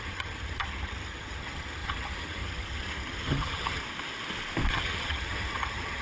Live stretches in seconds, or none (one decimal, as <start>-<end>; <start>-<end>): 3.8-4.7